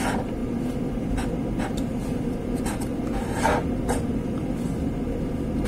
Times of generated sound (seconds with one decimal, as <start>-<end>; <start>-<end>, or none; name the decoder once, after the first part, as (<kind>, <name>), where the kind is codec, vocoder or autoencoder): none